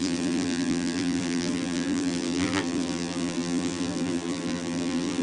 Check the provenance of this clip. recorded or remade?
remade